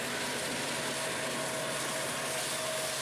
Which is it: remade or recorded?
recorded